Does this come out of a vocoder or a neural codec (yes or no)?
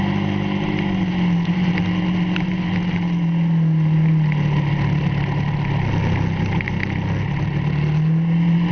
no